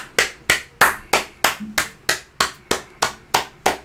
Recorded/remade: recorded